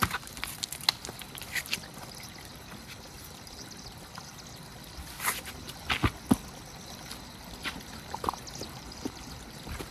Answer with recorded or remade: recorded